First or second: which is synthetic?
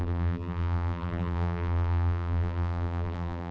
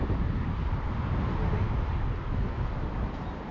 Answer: first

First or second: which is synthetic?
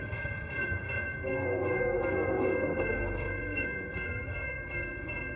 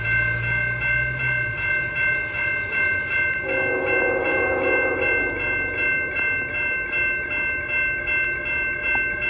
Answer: first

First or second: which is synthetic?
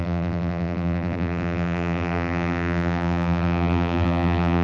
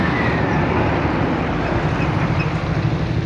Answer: first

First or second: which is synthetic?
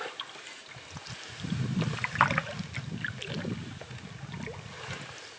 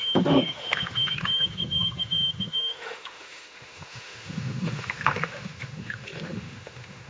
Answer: second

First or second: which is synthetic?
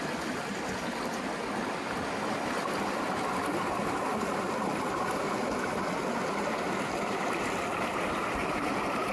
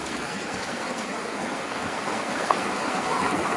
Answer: second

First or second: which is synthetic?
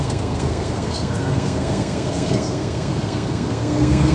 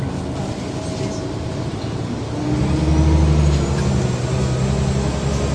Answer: first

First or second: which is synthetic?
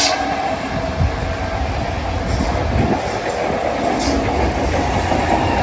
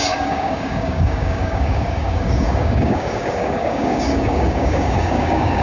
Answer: second